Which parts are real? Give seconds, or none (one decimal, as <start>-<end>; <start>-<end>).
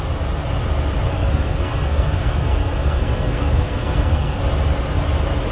0.0-1.1; 4.4-5.5